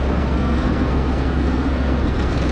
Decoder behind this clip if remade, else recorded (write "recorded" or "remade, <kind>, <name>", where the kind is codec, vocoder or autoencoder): remade, codec, SNAC